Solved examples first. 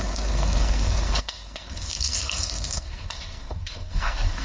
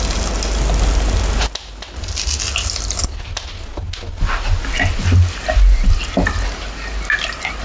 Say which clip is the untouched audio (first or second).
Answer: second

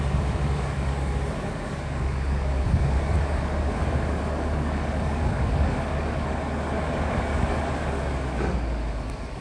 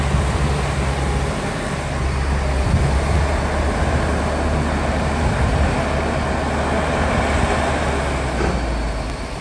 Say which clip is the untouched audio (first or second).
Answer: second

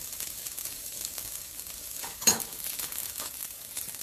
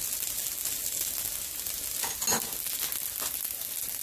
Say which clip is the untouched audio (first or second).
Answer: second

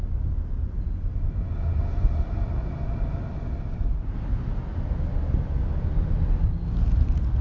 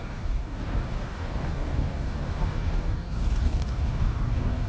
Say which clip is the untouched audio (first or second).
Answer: first